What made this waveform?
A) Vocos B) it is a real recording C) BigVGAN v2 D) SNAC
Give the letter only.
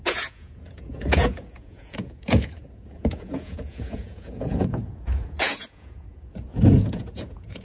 A